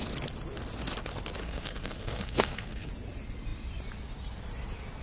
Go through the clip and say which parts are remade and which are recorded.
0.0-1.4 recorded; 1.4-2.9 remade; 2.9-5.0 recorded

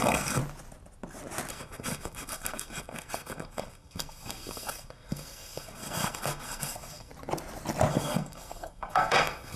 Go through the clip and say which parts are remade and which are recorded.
0.0-0.4 remade; 0.4-1.5 recorded; 1.5-7.1 remade; 7.1-7.9 recorded; 7.9-9.6 remade

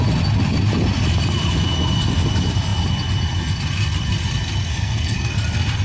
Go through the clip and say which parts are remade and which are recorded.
0.0-4.7 recorded; 4.7-5.3 remade; 5.3-5.8 recorded

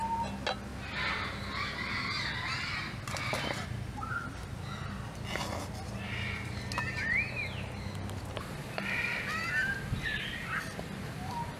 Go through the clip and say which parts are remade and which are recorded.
0.0-11.6 recorded

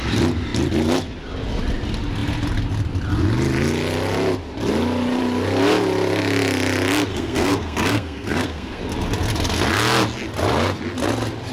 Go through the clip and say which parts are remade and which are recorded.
0.0-7.1 recorded; 7.1-8.8 remade; 8.8-11.5 recorded

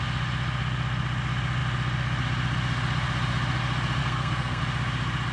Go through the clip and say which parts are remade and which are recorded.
0.0-4.0 recorded; 4.0-4.6 remade; 4.6-5.3 recorded

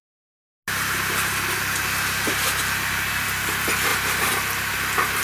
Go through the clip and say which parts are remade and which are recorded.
0.0-5.2 recorded